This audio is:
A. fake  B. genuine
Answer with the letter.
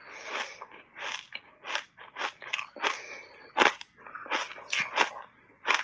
B